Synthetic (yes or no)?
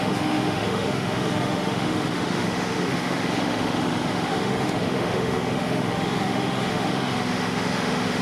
yes